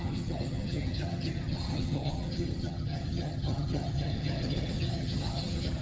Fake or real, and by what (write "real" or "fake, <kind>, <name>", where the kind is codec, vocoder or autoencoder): fake, vocoder, HiFi-GAN